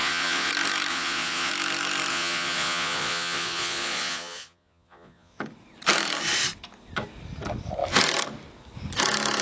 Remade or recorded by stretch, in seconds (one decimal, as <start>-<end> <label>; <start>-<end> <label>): 0.0-0.5 remade; 0.5-0.9 recorded; 0.9-1.5 remade; 1.5-2.1 recorded; 2.1-5.4 remade; 5.4-9.4 recorded